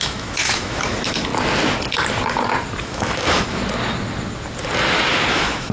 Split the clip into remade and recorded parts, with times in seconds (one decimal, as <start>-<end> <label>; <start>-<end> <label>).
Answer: 0.0-1.3 remade; 1.3-2.8 recorded; 2.8-3.6 remade; 3.6-5.3 recorded; 5.3-5.7 remade